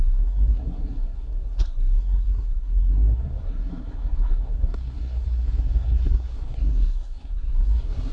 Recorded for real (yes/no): no